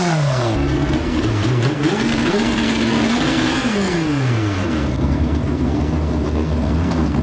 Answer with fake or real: fake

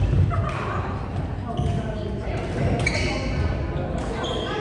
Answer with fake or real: real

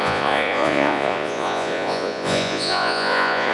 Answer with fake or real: fake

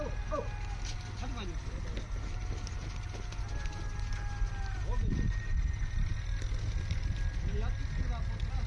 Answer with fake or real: real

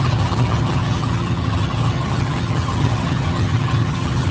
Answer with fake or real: fake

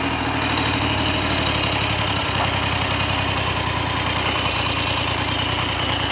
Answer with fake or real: real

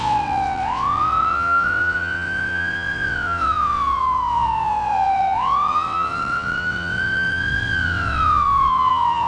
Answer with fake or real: fake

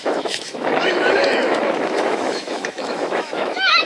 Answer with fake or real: fake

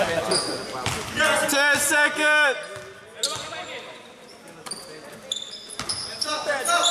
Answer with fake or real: real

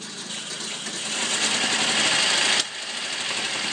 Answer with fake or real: real